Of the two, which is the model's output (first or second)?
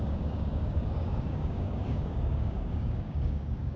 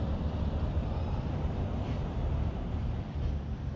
first